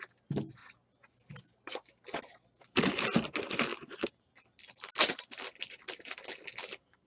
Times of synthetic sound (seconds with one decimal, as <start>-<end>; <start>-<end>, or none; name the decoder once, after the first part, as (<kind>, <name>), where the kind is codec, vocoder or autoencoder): none